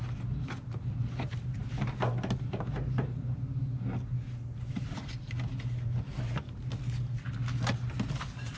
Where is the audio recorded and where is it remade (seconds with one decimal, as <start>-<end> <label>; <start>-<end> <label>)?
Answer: 0.0-8.6 recorded